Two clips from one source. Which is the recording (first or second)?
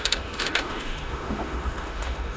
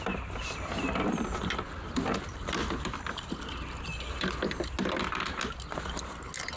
second